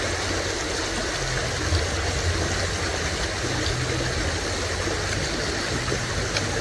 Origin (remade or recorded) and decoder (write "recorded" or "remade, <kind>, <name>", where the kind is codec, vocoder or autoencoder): recorded